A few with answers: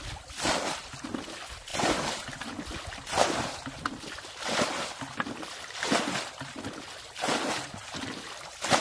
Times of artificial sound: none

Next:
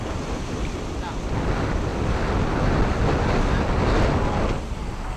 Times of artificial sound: none

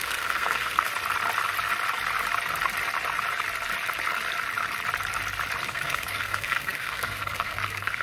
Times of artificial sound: 0.0-0.9; 5.7-8.0